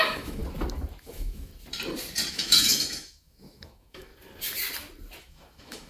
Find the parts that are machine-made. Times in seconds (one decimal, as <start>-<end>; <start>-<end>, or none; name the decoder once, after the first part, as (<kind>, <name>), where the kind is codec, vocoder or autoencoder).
0.0-0.4 (autoencoder, DAC-VAE); 1.0-1.5; 2.3-4.1; 5.2-5.9